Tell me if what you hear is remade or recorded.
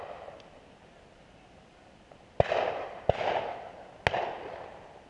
recorded